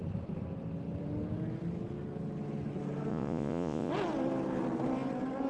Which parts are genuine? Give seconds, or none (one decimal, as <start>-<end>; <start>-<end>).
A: 0.0-3.1; 3.9-5.5